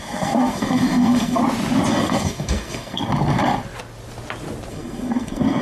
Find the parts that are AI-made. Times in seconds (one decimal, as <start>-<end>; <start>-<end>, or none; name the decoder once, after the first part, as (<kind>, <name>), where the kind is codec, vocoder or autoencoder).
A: 0.0-1.4 (codec, SNAC); 1.9-3.1; 4.7-5.6